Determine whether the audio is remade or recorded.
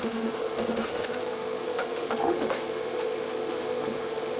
remade